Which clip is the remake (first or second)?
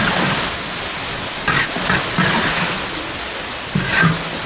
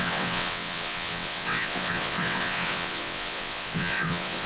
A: second